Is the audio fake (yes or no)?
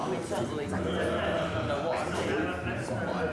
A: no